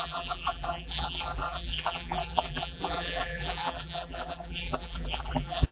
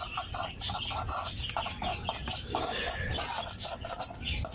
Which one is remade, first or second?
first